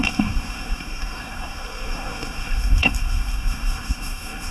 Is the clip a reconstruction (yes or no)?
yes